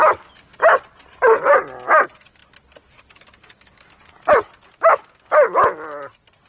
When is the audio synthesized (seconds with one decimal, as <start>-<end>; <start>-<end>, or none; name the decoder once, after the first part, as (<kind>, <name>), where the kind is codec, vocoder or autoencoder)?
none

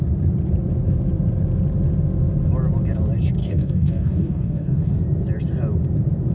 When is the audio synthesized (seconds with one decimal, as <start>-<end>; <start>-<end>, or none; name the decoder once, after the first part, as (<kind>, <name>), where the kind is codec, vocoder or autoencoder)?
3.4-4.9 (codec, DAC)